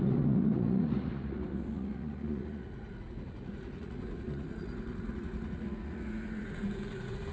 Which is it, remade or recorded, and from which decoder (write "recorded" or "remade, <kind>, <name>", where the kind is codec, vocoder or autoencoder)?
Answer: remade, vocoder, Vocos